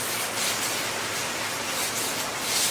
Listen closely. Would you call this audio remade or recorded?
recorded